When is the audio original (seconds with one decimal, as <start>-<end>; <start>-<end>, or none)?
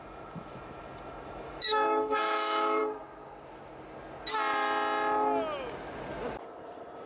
2.8-7.1